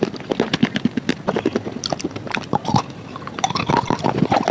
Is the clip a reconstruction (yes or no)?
no